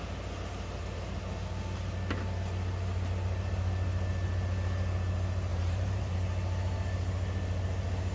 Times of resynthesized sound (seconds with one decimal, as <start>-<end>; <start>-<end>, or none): 5.5-6.1